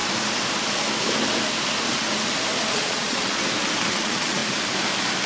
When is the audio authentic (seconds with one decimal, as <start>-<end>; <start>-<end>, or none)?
0.0-2.7; 3.4-3.9; 4.4-5.3